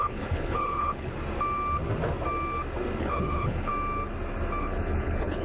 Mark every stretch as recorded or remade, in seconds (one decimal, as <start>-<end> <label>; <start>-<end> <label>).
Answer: 0.0-1.1 remade; 1.1-3.0 recorded; 3.0-3.7 remade; 3.7-4.6 recorded; 4.6-5.4 remade